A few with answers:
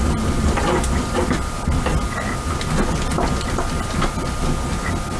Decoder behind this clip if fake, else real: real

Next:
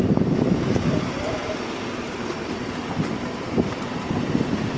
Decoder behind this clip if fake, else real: fake, vocoder, BigVGAN v2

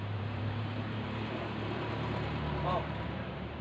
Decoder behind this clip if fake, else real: fake, vocoder, BigVGAN v2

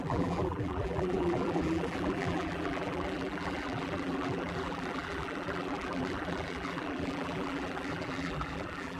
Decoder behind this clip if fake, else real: fake, vocoder, BigVGAN v2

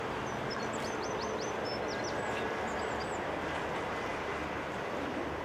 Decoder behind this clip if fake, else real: real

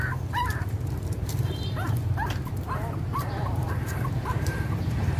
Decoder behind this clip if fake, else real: fake, vocoder, BigVGAN v2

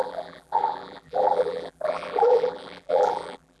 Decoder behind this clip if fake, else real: fake, vocoder, BigVGAN v2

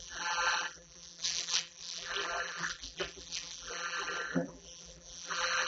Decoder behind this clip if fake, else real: fake, vocoder, BigVGAN v2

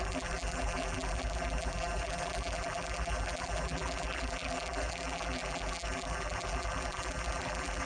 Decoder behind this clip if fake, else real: fake, vocoder, BigVGAN v2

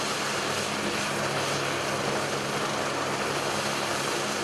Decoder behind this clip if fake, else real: real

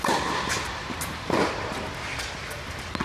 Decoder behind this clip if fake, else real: real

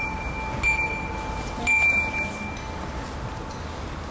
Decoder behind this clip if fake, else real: real